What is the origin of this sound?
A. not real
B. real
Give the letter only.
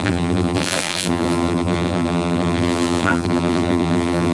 A